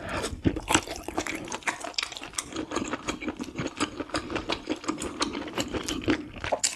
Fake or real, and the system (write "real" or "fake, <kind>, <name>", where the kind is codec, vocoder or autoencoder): fake, vocoder, BigVGAN v2